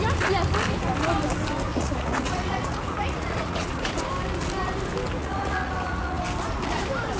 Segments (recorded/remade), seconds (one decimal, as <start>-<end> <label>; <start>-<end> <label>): 0.0-1.7 recorded; 1.7-3.9 remade; 3.9-5.2 recorded; 5.2-6.2 remade; 6.2-7.2 recorded